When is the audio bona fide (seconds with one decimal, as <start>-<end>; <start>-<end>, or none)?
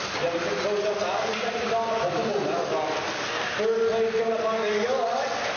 0.0-5.6